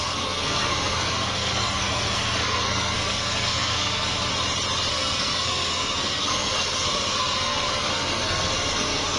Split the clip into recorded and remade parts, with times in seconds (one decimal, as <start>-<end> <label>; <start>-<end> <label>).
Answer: 0.0-4.3 remade; 4.3-4.9 recorded; 4.9-9.2 remade